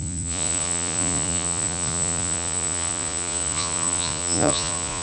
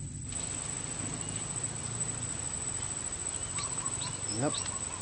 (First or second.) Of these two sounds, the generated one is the first